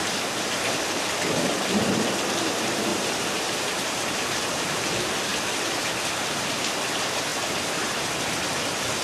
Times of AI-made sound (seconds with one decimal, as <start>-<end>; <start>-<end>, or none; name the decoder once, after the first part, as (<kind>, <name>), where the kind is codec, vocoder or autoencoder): 2.9-4.5 (vocoder, BigVGAN v2)

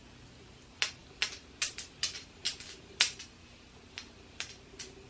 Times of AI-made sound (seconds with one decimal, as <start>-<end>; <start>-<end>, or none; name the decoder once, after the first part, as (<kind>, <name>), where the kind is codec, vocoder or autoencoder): none

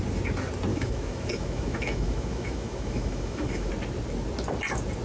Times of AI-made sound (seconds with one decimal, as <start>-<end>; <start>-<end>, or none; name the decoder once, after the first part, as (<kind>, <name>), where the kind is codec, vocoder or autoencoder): 0.7-3.7 (autoencoder, DAC-VAE)

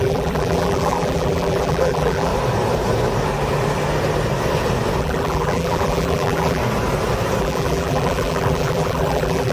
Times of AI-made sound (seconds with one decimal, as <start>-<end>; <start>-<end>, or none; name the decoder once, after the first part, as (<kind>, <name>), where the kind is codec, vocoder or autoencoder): 0.0-2.3 (vocoder, BigVGAN v2); 5.0-6.6; 7.4-9.5

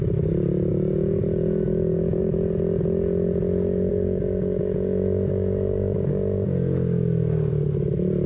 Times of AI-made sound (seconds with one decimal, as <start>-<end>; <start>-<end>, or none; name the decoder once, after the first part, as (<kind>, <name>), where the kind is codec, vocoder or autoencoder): 0.7-2.2 (codec, DAC); 3.9-7.5

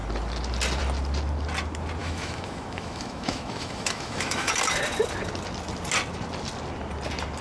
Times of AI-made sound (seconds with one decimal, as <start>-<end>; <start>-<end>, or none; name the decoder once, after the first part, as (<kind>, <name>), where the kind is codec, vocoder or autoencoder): 2.0-4.5 (autoencoder, DAC-VAE)

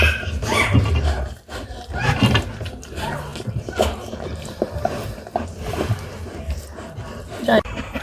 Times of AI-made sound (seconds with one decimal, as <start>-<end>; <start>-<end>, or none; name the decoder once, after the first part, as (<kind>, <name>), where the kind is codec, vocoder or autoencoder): none

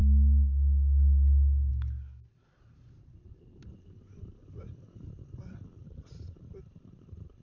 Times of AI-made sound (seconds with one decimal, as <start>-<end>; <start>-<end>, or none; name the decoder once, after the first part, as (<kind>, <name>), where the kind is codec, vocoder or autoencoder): none